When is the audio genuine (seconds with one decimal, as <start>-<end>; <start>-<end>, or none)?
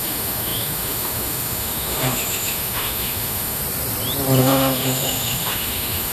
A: 3.6-4.4